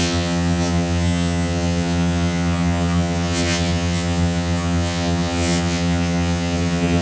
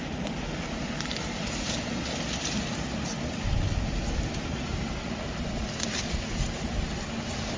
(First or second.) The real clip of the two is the second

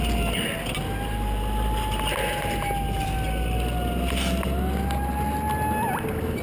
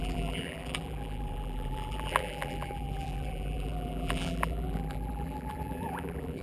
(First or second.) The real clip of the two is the first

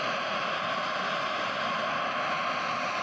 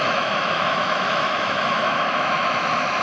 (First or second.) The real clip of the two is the first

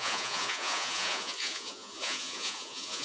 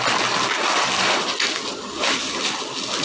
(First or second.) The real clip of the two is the second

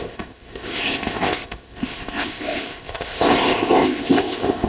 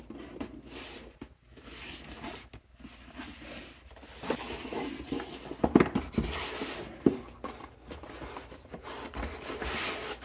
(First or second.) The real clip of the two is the second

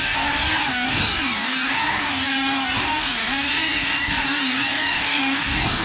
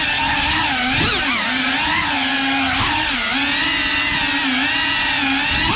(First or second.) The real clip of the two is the second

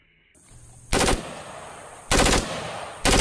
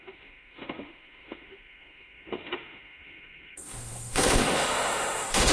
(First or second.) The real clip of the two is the first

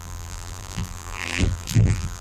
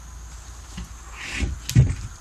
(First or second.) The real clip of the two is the second